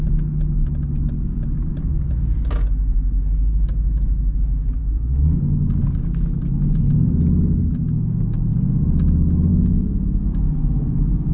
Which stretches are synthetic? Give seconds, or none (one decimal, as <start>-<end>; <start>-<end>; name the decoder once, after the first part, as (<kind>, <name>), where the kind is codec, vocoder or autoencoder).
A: 4.8-5.7 (autoencoder, DAC-VAE); 9.5-11.3